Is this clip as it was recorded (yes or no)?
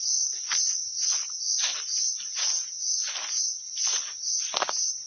yes